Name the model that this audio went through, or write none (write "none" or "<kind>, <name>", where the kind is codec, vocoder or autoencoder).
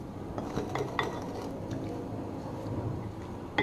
none